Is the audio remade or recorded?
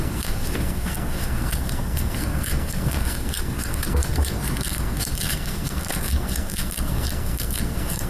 remade